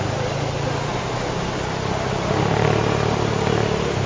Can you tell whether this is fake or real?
real